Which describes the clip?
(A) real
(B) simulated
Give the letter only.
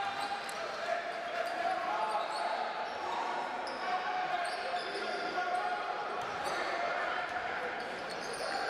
B